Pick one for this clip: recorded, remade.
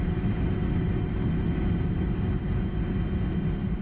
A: recorded